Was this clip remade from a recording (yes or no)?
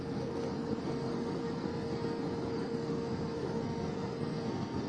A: yes